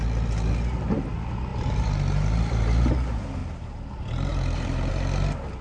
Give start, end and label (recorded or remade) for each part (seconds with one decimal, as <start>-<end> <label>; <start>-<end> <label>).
0.0-1.5 recorded; 1.5-2.9 remade; 2.9-3.4 recorded; 3.4-3.9 remade; 3.9-4.3 recorded; 4.3-4.9 remade; 4.9-5.6 recorded